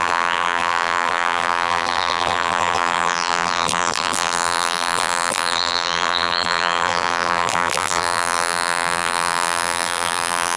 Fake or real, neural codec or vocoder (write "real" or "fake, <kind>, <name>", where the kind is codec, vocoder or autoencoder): fake, vocoder, BigVGAN v2